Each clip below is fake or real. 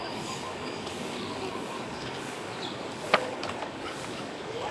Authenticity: fake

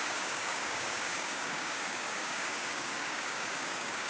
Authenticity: fake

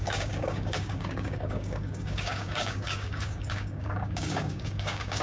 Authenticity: fake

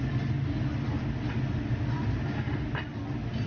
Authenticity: real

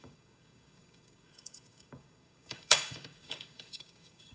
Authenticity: fake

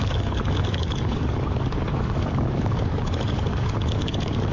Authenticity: fake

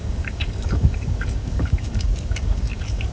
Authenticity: fake